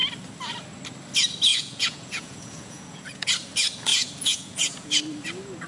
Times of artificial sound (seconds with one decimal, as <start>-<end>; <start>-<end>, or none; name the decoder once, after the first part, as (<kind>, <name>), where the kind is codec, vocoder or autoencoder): 1.5-3.3 (vocoder, Vocos); 3.9-5.0